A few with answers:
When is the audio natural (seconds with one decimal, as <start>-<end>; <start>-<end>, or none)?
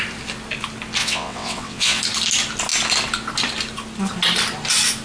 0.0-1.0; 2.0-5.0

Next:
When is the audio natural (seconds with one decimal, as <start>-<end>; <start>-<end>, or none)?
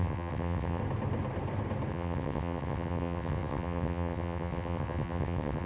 0.8-1.9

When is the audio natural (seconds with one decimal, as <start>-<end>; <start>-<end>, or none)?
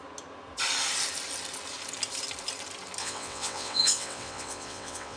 0.0-3.0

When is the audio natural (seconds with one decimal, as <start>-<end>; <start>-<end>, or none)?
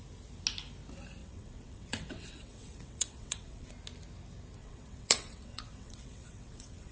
0.0-1.2; 3.7-4.6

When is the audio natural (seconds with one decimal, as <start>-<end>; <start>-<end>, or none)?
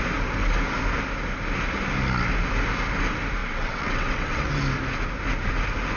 0.0-3.4; 4.5-6.0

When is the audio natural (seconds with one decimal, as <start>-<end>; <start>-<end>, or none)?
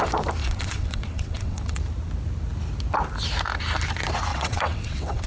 0.0-0.4; 1.8-4.3